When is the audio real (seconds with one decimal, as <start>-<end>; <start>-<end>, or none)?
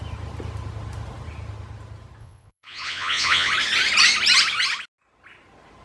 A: 0.0-2.2; 3.5-5.8